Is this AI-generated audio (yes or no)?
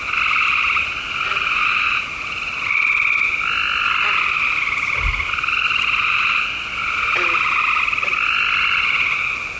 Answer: no